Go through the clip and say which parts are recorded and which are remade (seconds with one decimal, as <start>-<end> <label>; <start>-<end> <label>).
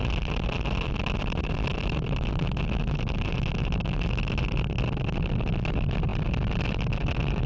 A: 0.0-7.5 recorded